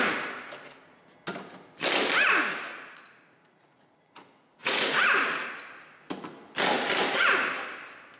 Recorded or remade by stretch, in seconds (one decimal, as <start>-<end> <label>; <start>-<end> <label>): 0.0-2.7 recorded; 2.7-5.5 remade; 5.5-8.2 recorded